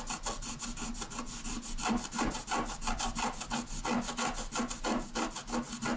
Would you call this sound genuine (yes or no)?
yes